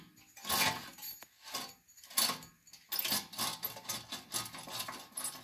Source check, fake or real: real